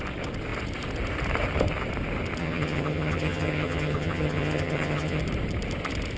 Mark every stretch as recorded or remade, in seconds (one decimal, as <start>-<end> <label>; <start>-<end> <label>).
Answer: 0.0-2.4 recorded; 2.4-5.2 remade; 5.2-6.2 recorded